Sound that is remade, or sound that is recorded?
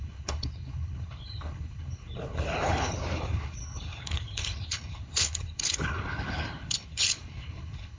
remade